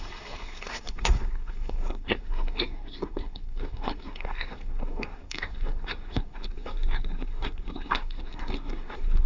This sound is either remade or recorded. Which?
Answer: remade